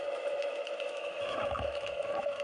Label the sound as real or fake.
fake